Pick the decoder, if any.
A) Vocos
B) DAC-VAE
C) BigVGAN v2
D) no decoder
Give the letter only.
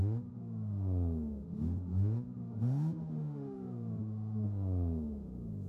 B